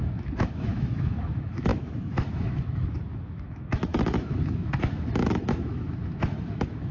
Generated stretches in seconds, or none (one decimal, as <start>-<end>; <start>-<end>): 0.0-6.9

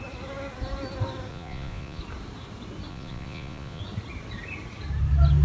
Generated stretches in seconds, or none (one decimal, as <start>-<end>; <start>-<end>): 1.3-2.0; 2.9-3.8

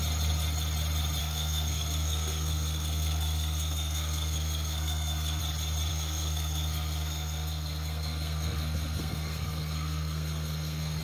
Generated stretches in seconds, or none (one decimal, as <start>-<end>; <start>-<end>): 1.2-5.4; 5.9-11.0